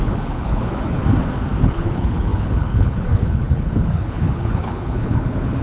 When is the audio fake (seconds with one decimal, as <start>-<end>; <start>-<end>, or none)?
0.0-1.0; 1.6-5.6